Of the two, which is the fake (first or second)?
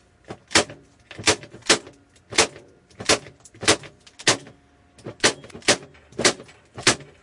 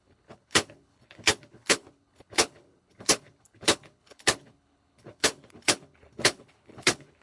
second